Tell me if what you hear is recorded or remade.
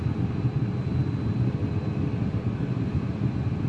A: recorded